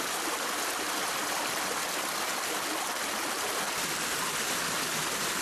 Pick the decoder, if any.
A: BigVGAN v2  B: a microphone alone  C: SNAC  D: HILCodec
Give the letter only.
B